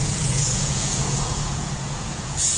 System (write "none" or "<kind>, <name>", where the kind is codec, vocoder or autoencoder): vocoder, Vocos